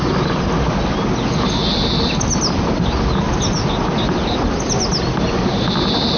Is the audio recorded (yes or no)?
yes